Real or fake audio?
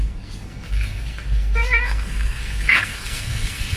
fake